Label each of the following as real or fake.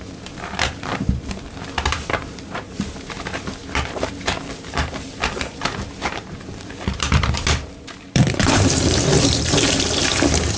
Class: fake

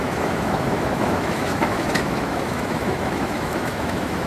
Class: fake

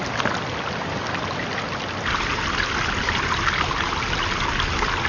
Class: real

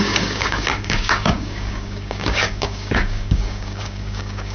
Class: fake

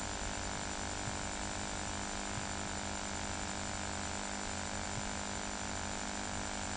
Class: real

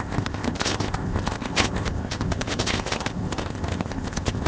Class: fake